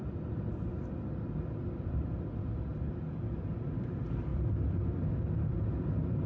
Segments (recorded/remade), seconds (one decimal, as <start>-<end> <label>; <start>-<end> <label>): 0.0-0.7 remade; 0.7-1.9 recorded; 1.9-2.7 remade; 2.7-3.3 recorded; 3.3-6.3 remade